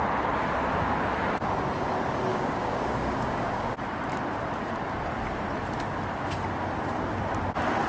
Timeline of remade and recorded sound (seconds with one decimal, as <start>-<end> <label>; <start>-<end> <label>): 0.0-2.3 recorded; 2.3-3.7 remade; 3.7-7.9 recorded